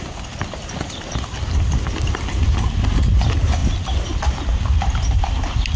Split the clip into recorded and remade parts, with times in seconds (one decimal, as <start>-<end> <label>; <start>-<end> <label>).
0.0-5.8 recorded